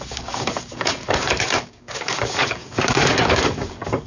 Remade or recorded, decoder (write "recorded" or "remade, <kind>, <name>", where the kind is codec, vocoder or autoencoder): remade, codec, DAC